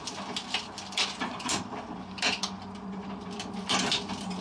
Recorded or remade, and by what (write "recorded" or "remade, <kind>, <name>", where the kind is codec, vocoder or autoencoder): recorded